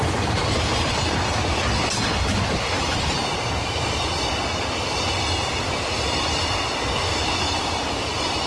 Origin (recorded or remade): recorded